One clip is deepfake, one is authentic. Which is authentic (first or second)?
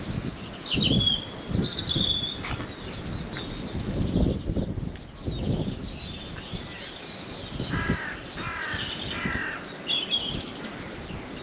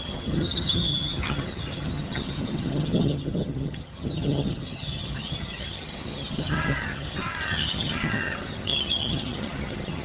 first